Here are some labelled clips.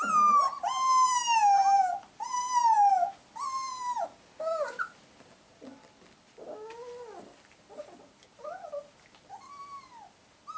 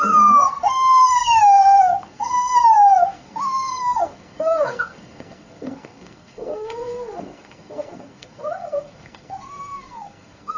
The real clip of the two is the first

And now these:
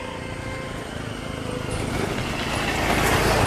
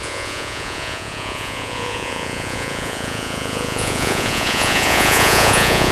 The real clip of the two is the first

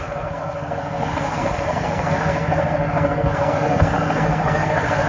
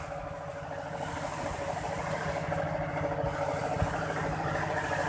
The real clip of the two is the second